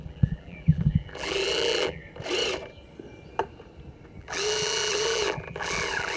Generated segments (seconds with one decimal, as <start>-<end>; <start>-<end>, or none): 0.0-2.0; 4.2-6.2